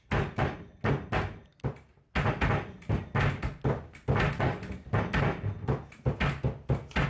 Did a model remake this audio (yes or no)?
no